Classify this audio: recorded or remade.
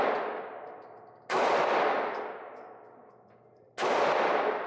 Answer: recorded